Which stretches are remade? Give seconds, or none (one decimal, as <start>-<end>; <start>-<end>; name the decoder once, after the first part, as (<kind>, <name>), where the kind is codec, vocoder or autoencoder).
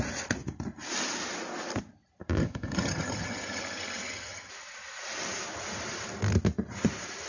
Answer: 2.4-4.5 (vocoder, HiFi-GAN)